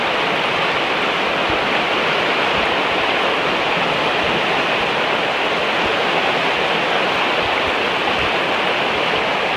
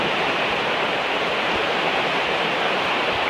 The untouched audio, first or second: first